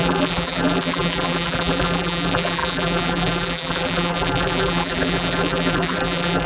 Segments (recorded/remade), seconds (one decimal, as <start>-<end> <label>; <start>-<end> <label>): 0.0-6.5 remade